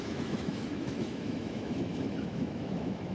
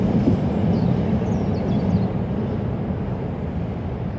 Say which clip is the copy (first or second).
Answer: first